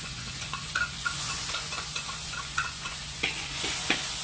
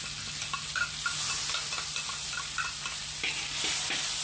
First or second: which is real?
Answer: second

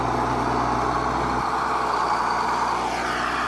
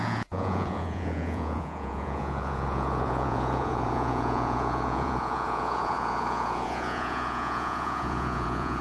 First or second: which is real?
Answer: first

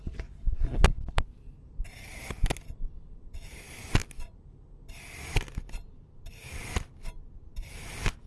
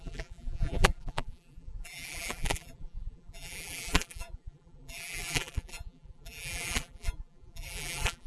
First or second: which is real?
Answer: first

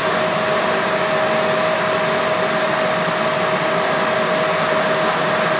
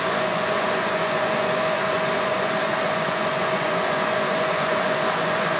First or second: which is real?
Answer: first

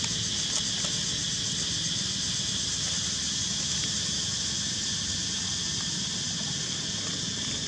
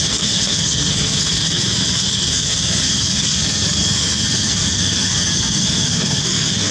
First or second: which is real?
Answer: first